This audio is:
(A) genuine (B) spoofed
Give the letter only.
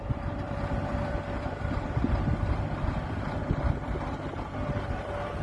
B